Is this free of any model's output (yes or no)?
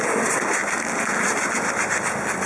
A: yes